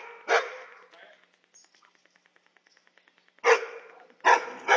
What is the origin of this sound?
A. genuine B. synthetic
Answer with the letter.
A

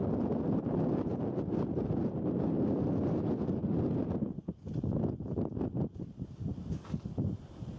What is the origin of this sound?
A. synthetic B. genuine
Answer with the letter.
B